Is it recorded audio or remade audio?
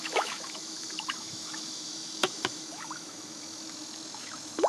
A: remade